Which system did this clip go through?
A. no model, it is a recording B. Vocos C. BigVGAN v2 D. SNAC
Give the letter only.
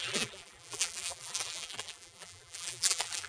C